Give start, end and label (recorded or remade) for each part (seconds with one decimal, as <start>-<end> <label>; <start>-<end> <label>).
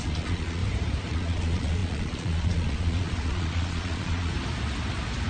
0.0-0.6 remade; 0.6-1.1 recorded; 1.1-4.3 remade; 4.3-5.3 recorded